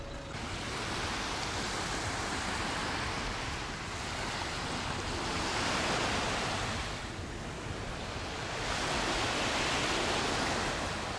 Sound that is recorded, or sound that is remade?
recorded